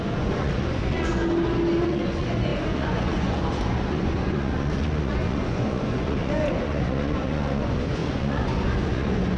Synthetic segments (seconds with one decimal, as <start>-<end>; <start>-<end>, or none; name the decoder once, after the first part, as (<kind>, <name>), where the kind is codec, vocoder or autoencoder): 0.0-1.2 (vocoder, Vocos); 1.8-9.4